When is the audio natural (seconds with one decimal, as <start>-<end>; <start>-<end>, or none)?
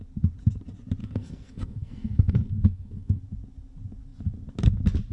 0.0-1.0; 3.2-5.1